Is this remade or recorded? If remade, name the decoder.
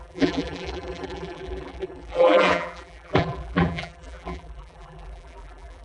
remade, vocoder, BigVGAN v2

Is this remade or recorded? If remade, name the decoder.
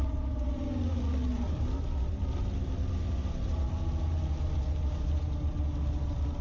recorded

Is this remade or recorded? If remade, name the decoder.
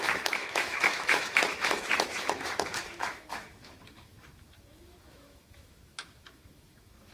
remade, autoencoder, DAC-VAE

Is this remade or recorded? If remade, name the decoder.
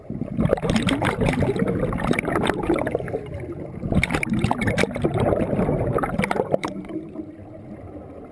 remade, vocoder, BigVGAN v2